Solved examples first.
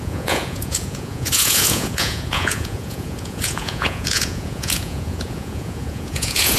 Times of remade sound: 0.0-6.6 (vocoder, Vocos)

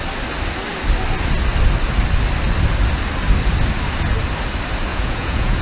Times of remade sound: 4.9-5.6 (vocoder, Vocos)

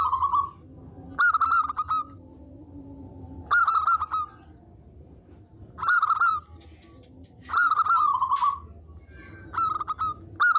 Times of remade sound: none

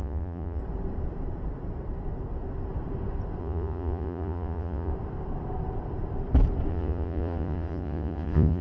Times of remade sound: 0.0-0.6 (vocoder, Vocos); 3.4-4.9; 6.7-8.6

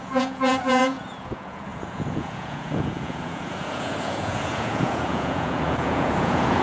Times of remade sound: 0.0-6.6 (vocoder, Vocos)

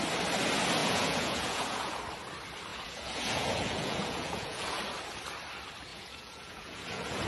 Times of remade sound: 0.8-2.0 (vocoder, Vocos); 2.7-4.8; 5.9-7.3

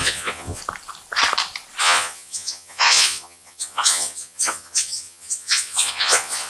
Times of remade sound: 0.0-0.6 (vocoder, Vocos); 1.8-6.5